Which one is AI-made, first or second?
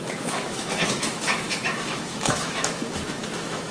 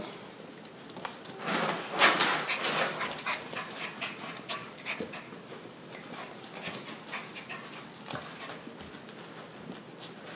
first